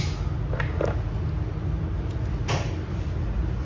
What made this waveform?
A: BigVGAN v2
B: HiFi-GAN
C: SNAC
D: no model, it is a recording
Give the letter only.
D